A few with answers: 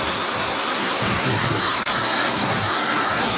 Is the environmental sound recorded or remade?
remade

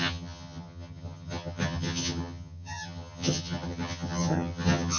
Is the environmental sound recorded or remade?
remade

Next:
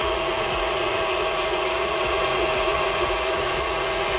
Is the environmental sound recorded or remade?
remade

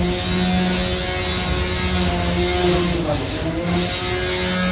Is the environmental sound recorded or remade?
recorded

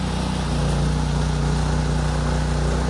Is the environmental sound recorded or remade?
recorded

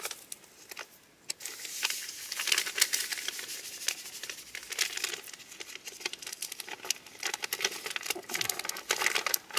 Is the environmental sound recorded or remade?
recorded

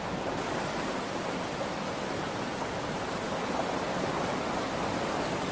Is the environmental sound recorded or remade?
recorded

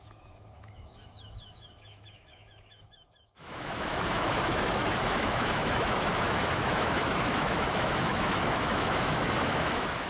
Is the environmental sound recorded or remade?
remade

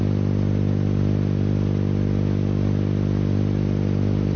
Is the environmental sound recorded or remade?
recorded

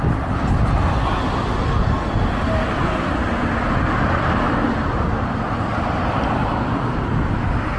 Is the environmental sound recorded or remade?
recorded